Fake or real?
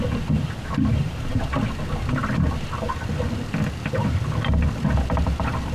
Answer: real